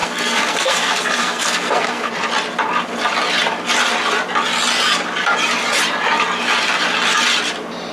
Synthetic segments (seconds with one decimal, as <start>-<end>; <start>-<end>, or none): 0.0-2.1